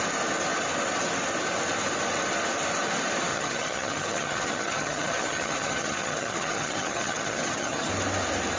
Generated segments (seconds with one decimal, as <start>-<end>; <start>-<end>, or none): 3.3-7.9